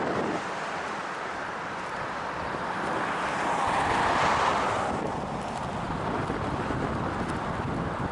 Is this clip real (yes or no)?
yes